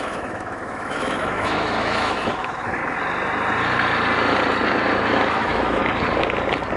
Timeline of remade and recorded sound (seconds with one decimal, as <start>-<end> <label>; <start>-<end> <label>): 0.0-2.8 remade; 2.8-5.3 recorded; 5.3-5.8 remade; 5.8-6.8 recorded